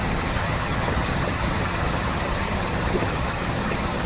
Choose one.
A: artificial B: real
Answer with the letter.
A